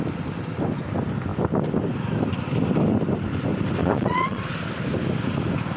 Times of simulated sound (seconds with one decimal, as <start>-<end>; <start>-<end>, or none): 3.8-4.4